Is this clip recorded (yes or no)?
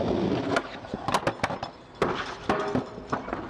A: yes